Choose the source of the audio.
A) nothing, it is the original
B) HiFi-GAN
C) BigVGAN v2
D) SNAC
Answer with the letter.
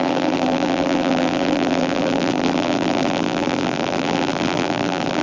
C